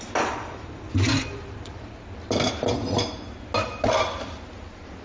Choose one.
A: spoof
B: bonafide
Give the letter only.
B